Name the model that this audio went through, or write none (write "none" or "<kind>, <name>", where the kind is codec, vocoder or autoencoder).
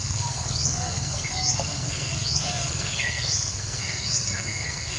codec, SNAC